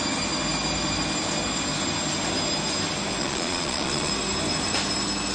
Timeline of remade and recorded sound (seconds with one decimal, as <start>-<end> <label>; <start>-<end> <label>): 0.0-3.2 recorded; 3.2-4.1 remade; 4.1-5.3 recorded

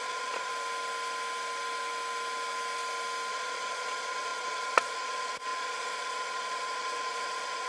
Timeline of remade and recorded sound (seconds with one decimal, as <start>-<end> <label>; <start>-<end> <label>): 0.0-0.5 remade; 0.5-3.3 recorded; 3.3-7.7 remade

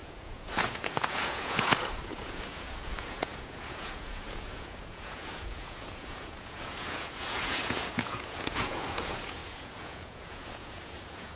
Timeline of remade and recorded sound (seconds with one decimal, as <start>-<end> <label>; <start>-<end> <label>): 0.0-11.4 remade

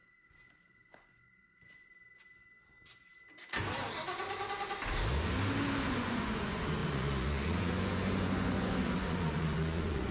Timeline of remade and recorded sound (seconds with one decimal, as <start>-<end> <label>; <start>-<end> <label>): 0.0-1.9 remade; 1.9-5.9 recorded; 5.9-10.1 remade

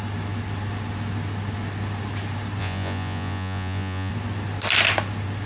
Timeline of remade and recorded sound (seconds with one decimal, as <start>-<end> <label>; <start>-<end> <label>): 0.0-2.6 recorded; 2.6-4.1 remade; 4.1-5.5 recorded

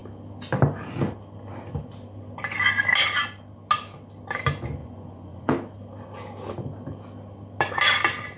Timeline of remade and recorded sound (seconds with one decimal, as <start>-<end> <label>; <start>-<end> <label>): 0.0-4.8 recorded; 4.8-5.5 remade; 5.5-8.4 recorded